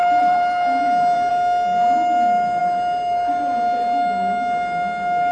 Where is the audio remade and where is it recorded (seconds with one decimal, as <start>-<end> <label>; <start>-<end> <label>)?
0.0-1.3 remade; 1.3-2.6 recorded; 2.6-3.3 remade; 3.3-5.3 recorded